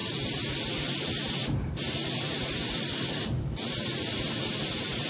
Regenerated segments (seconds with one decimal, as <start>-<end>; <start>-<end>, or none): 2.0-4.4